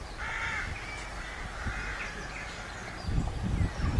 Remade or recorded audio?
recorded